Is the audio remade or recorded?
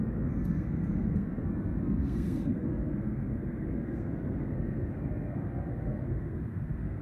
remade